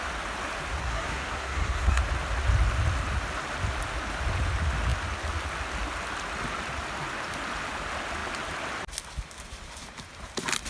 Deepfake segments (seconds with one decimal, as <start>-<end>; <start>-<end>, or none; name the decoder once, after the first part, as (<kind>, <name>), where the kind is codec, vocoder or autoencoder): 0.8-2.0 (codec, SNAC)